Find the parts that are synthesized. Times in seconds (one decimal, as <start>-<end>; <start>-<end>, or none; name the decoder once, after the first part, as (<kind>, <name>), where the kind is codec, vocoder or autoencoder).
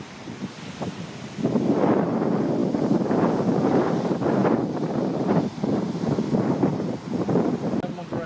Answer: none